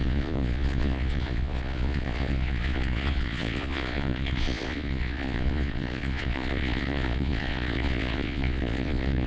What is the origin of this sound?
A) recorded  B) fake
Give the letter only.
B